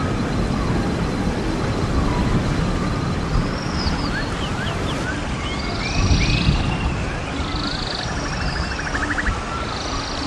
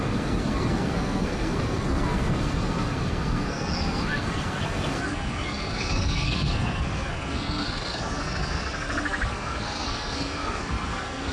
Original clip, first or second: first